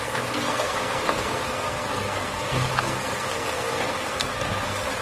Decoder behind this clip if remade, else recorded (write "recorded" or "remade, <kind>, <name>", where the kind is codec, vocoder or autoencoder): remade, codec, SNAC